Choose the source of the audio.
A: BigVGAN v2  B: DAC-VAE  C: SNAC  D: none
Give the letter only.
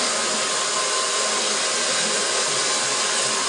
D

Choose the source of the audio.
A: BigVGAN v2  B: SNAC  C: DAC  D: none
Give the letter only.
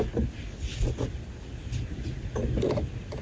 D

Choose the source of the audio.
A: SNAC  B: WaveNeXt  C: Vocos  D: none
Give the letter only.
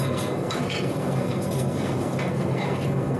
A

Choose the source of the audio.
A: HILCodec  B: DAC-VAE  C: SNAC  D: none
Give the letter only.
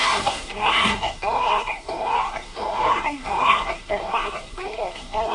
C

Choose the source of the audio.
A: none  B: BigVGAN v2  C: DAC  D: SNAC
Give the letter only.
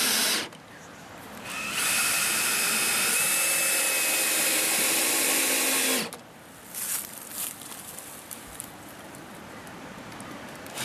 A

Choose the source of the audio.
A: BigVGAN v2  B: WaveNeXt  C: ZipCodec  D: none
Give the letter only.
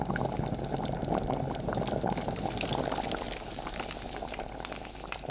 D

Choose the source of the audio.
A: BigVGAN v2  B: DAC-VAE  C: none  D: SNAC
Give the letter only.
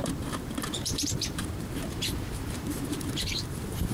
A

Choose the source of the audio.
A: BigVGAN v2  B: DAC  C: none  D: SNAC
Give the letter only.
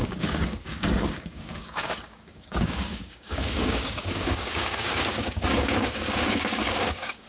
B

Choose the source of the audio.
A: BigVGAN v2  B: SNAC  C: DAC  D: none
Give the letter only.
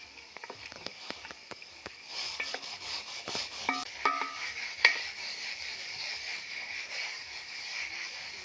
C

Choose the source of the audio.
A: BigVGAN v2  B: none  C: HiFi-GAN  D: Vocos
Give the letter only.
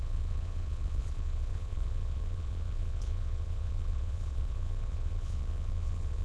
D